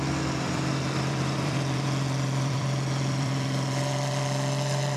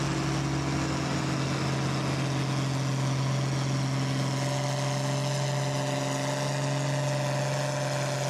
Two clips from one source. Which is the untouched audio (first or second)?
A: second